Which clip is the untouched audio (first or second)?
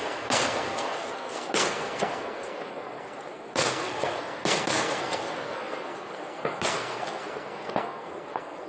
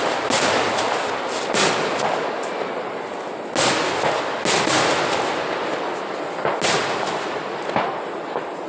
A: second